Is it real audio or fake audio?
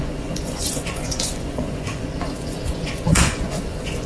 fake